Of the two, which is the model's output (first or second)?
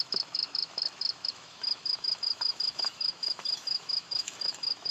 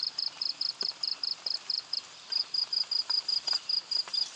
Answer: first